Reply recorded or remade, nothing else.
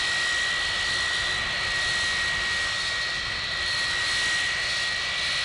recorded